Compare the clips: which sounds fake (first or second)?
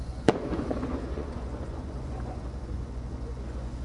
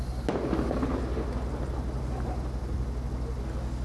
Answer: first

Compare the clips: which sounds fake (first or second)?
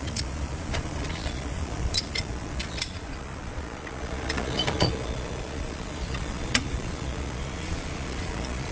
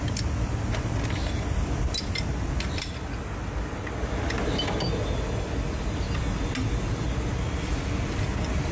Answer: first